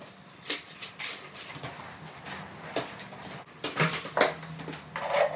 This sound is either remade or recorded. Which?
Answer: recorded